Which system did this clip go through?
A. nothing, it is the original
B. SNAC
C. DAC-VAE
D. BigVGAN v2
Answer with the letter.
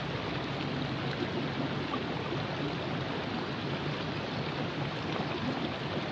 A